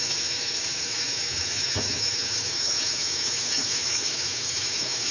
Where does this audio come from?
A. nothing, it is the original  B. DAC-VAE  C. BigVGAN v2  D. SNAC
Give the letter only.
B